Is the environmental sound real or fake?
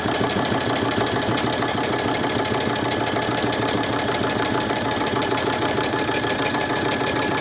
fake